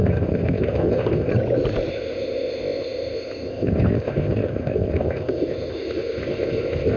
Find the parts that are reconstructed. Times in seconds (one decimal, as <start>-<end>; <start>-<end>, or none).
0.0-1.3; 1.9-7.0